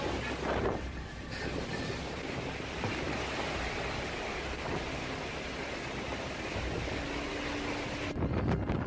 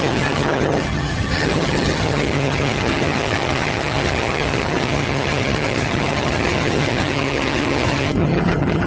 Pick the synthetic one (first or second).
second